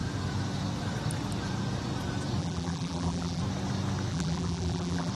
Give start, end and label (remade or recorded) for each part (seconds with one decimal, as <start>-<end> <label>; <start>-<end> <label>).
0.0-2.4 recorded; 2.4-3.4 remade; 3.4-4.1 recorded; 4.1-5.1 remade

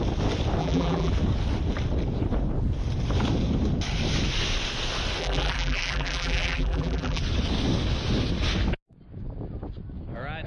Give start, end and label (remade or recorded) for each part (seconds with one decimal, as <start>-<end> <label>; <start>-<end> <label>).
0.0-0.6 recorded; 0.6-1.1 remade; 1.1-5.2 recorded; 5.2-7.2 remade; 7.2-10.5 recorded

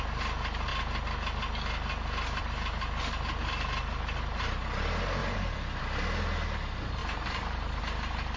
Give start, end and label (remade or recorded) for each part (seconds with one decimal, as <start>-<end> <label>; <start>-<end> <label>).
0.0-5.2 recorded; 5.2-5.8 remade; 5.8-7.0 recorded; 7.0-7.8 remade; 7.8-8.4 recorded

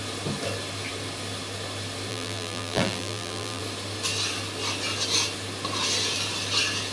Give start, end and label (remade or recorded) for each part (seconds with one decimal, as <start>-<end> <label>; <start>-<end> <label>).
0.0-2.1 recorded; 2.1-3.6 remade; 3.6-6.9 recorded